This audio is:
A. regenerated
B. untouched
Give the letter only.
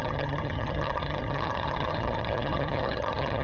A